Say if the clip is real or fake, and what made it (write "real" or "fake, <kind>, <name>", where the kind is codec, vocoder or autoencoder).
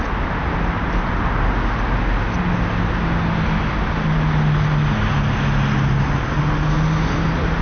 real